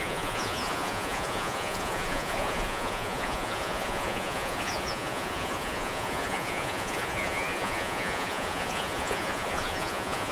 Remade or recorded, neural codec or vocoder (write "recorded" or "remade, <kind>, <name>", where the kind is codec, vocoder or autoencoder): remade, vocoder, Vocos